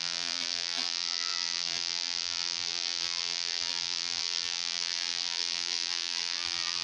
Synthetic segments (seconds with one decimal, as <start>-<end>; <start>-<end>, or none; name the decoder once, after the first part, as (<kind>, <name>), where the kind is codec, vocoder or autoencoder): 0.0-6.8 (vocoder, BigVGAN v2)